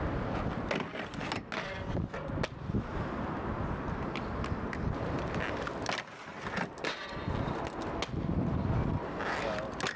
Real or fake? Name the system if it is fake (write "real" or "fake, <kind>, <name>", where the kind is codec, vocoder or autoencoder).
real